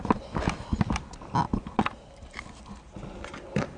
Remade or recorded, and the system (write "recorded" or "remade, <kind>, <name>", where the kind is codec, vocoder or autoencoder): recorded